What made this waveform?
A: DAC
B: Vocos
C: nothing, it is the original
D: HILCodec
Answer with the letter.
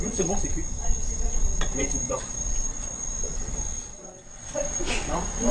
B